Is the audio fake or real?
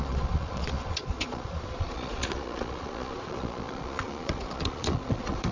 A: fake